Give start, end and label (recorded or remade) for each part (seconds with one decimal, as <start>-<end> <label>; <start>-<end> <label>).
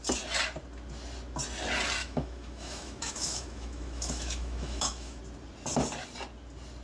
0.0-2.0 recorded; 2.0-5.2 remade; 5.2-6.8 recorded